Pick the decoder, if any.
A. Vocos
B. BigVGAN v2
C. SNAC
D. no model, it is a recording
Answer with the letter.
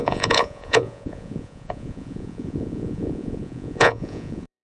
A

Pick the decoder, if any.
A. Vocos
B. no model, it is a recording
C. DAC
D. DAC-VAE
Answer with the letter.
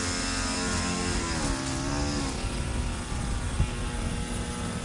B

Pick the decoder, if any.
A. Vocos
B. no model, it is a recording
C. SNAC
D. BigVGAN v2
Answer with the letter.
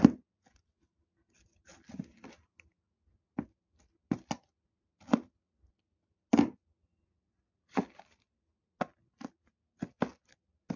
B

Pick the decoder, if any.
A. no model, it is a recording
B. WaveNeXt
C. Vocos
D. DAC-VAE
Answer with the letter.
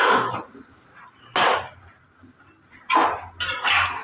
A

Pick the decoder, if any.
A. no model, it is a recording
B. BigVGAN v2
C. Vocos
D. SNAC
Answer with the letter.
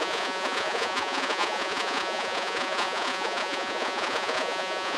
C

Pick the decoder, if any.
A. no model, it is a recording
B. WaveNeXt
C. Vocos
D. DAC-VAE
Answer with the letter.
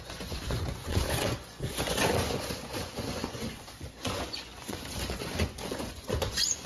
C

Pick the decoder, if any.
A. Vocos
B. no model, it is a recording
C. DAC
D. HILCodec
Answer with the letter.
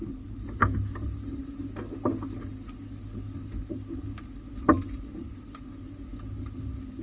B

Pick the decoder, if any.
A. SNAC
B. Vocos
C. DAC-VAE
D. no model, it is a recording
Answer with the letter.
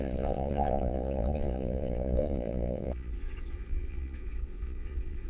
B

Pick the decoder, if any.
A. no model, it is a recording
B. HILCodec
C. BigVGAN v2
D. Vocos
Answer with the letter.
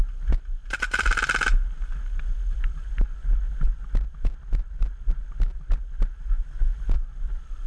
A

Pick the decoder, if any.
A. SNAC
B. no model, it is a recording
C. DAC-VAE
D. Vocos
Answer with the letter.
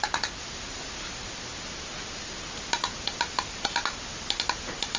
B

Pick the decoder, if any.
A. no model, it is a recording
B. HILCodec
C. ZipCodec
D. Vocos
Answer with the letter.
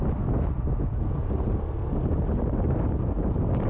A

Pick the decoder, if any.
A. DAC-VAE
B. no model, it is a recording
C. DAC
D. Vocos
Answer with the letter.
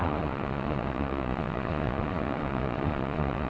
D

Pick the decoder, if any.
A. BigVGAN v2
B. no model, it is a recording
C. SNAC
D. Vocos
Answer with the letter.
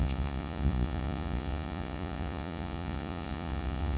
D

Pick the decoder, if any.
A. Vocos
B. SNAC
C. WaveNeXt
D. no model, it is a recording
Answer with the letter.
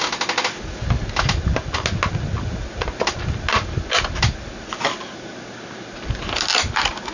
D